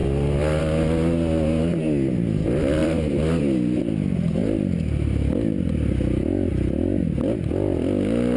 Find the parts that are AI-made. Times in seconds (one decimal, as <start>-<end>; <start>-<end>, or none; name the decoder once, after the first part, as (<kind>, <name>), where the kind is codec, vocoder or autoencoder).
0.0-0.6 (vocoder, BigVGAN v2); 2.8-3.8